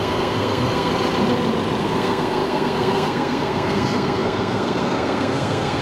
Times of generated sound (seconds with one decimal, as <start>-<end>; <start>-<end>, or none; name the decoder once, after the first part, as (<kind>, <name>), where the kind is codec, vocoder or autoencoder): 0.0-0.9 (codec, SNAC); 1.8-5.8